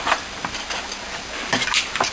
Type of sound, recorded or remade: recorded